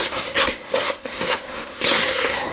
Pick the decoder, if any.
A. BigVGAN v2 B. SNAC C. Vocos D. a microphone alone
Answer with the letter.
B